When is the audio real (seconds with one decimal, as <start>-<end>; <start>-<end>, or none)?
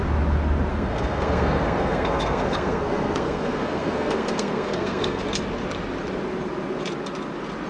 0.0-0.7; 5.2-7.7